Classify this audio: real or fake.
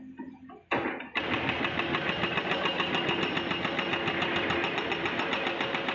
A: real